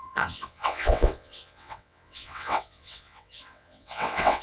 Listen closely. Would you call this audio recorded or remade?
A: remade